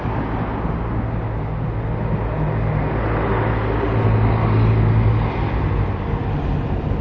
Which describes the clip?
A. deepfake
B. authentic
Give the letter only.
B